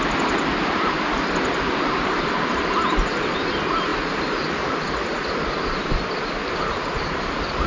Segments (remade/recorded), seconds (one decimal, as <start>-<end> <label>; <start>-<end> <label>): 0.0-7.7 recorded